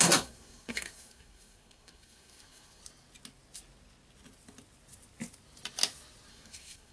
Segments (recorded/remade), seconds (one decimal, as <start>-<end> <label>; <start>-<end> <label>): 0.0-2.8 remade; 2.8-6.3 recorded; 6.3-6.9 remade